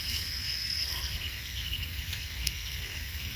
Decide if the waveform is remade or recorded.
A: remade